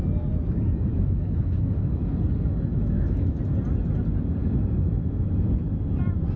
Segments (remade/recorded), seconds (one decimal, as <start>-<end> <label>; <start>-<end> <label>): 0.0-0.9 recorded; 0.9-2.0 remade; 2.0-2.7 recorded; 2.7-3.4 remade; 3.4-4.4 recorded; 4.4-5.3 remade; 5.3-6.4 recorded